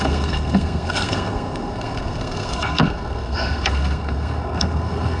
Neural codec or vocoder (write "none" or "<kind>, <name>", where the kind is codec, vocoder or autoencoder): codec, SNAC